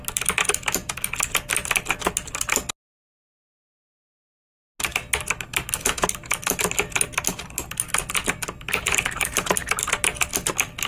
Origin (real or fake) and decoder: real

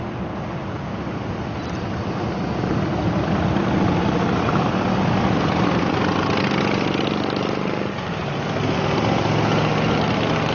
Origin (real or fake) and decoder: real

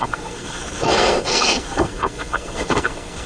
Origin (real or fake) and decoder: fake, codec, SNAC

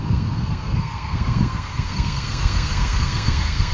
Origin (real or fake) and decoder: fake, codec, SNAC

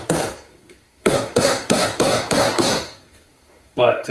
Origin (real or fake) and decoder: fake, codec, SNAC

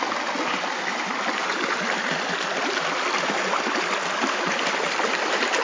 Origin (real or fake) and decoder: real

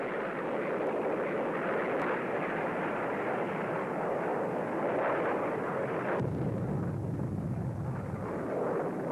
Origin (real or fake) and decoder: real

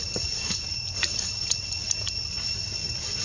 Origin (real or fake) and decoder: real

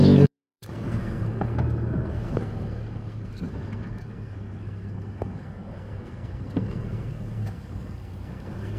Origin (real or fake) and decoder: fake, codec, SNAC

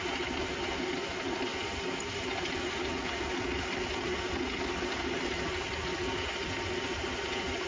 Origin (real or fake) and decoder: real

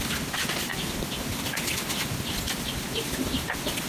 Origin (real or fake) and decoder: real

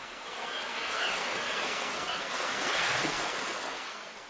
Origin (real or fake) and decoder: fake, codec, SNAC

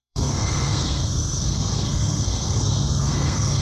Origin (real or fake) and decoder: fake, codec, SNAC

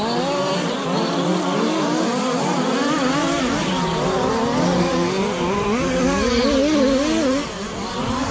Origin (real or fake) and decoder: real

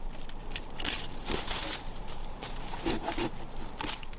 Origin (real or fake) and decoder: real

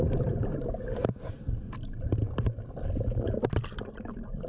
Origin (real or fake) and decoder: real